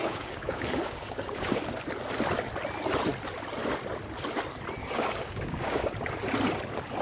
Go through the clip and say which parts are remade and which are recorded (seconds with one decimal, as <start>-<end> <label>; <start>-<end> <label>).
0.0-1.6 remade; 1.6-4.8 recorded; 4.8-5.8 remade; 5.8-7.0 recorded